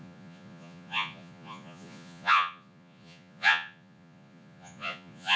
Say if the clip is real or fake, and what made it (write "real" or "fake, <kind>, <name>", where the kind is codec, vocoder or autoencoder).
fake, vocoder, Vocos